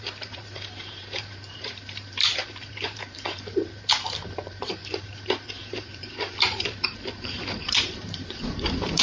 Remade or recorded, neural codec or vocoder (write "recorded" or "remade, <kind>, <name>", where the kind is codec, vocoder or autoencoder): remade, vocoder, BigVGAN v2